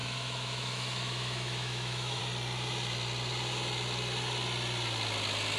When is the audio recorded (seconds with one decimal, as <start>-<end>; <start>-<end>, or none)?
2.2-5.6